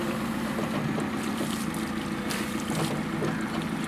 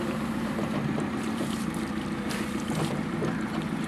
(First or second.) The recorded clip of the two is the first